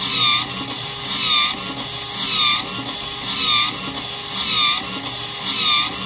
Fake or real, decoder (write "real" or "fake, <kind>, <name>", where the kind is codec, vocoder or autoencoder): real